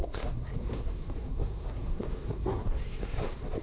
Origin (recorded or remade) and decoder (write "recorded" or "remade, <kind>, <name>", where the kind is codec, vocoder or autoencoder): remade, codec, SNAC